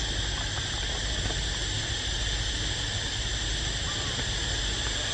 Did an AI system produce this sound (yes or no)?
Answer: no